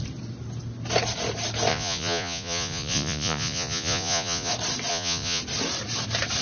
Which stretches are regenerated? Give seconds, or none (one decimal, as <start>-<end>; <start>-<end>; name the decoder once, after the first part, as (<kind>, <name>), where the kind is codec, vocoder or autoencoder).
1.7-4.5 (vocoder, Vocos); 4.9-5.4